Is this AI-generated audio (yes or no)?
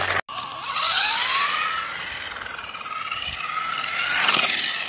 no